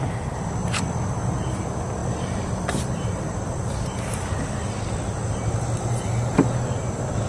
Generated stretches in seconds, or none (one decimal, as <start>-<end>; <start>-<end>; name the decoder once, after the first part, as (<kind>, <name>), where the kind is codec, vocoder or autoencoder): 0.6-1.6 (vocoder, BigVGAN v2); 2.0-4.4